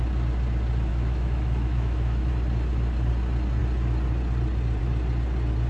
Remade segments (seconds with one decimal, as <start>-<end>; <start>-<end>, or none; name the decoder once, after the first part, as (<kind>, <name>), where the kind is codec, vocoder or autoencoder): 0.9-2.3 (autoencoder, DAC-VAE)